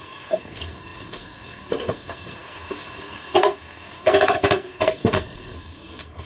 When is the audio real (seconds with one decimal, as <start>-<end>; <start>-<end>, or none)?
none